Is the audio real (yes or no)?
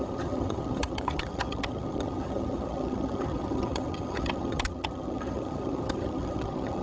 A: no